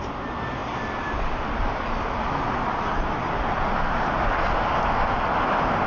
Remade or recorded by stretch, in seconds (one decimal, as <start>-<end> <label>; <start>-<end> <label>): 0.0-5.9 recorded